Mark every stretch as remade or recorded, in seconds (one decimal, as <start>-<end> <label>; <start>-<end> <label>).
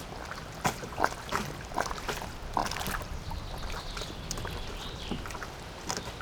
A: 0.0-6.2 recorded